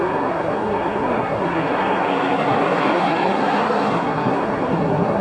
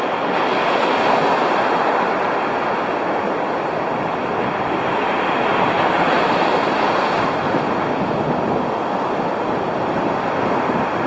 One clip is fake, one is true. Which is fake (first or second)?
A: first